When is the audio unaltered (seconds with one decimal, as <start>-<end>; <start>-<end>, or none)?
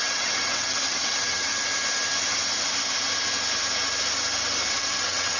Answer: 1.5-4.7